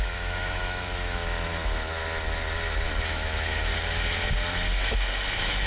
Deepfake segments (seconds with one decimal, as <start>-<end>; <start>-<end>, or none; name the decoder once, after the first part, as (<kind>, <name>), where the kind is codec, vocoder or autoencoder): 0.0-2.0 (autoencoder, DAC-VAE); 3.0-3.7; 5.3-5.7